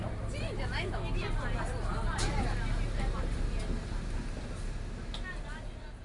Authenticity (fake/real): real